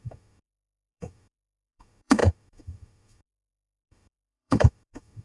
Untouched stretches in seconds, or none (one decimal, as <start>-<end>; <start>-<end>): none